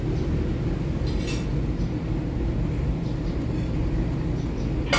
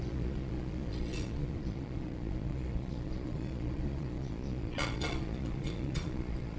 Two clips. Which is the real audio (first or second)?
first